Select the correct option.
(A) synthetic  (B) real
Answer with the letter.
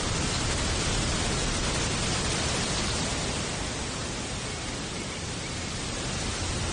B